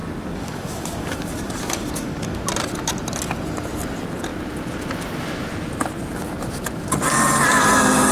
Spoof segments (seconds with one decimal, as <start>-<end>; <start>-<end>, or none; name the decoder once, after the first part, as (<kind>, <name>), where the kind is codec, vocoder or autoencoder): 0.0-2.4 (codec, DAC)

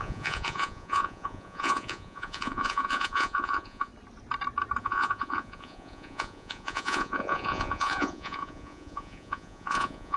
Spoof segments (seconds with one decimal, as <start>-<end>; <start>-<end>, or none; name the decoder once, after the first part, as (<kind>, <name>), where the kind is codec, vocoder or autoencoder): 0.0-3.9 (vocoder, Vocos); 4.8-10.2

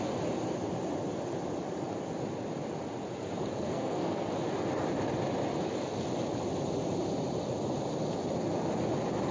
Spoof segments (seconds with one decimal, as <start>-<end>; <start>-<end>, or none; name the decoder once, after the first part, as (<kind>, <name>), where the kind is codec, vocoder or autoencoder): 3.5-4.3 (codec, SNAC)

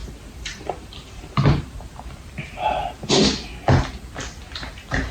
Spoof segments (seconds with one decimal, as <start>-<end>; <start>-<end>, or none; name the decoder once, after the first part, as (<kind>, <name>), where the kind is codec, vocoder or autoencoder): 0.0-3.1 (vocoder, BigVGAN v2)

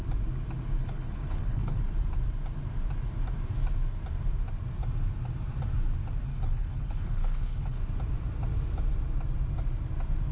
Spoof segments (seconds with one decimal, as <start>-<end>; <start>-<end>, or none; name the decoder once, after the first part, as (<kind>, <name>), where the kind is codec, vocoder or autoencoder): 0.8-1.8 (codec, HILCodec); 6.3-7.8

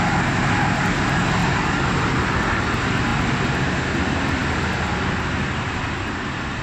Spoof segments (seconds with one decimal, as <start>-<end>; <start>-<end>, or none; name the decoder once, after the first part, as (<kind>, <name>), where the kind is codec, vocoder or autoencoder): 1.4-2.6 (vocoder, BigVGAN v2); 3.1-3.6

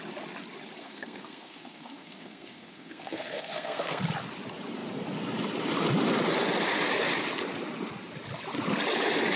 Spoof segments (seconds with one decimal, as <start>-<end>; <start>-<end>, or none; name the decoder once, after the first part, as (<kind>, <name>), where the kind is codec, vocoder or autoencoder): 0.8-4.0 (codec, SNAC)

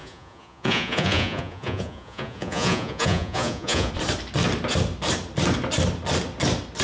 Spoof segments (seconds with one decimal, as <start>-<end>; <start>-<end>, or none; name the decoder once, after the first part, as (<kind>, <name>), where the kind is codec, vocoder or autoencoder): 0.0-3.9 (vocoder, Vocos)